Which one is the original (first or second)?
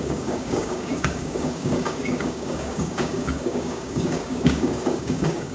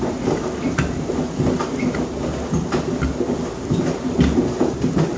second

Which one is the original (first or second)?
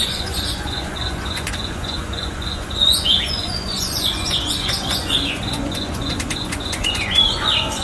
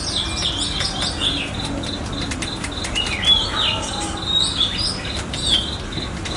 second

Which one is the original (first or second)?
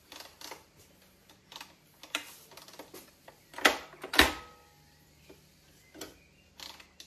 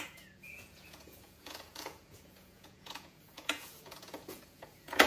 first